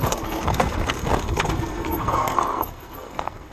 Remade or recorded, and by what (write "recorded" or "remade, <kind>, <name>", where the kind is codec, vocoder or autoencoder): remade, codec, SNAC